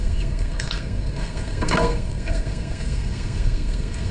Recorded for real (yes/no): no